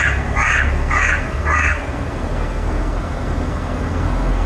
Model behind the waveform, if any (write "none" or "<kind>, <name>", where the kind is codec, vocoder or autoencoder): codec, SNAC